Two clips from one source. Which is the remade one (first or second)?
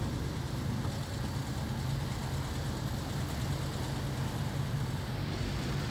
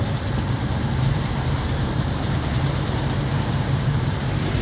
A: second